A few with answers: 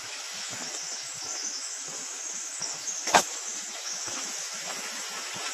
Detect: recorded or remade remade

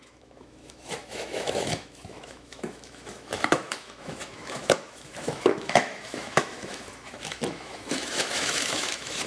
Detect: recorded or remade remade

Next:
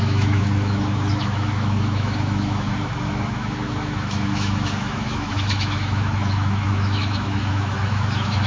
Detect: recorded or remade remade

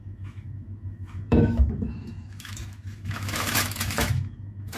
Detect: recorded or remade remade